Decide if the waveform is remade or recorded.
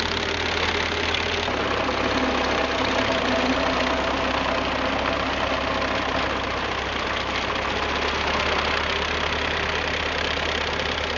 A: recorded